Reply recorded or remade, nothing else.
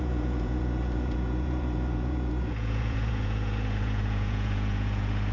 remade